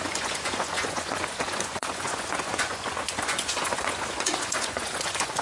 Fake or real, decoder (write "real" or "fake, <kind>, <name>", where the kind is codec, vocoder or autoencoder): fake, vocoder, Vocos